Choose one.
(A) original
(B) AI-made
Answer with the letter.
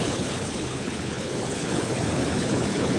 B